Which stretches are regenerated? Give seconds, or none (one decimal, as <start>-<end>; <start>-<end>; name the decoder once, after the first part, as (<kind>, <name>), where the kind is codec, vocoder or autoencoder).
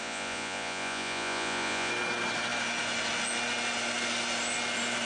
0.0-1.9 (vocoder, Vocos)